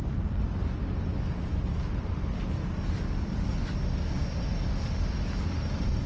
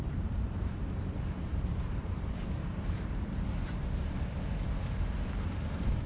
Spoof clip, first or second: second